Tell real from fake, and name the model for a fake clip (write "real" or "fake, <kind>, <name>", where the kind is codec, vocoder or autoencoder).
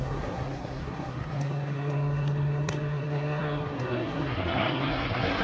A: fake, codec, SNAC